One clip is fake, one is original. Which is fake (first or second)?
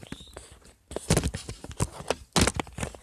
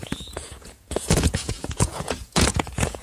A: second